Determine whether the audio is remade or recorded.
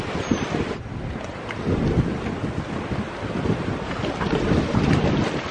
recorded